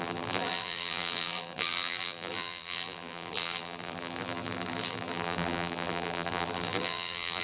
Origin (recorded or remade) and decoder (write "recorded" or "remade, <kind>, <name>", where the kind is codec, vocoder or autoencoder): remade, vocoder, BigVGAN v2